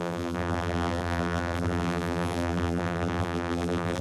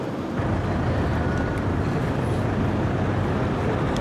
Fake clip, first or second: first